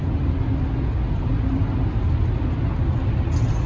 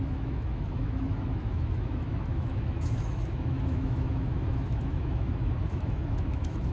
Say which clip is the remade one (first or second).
second